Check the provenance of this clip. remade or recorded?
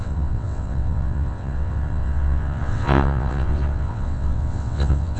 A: remade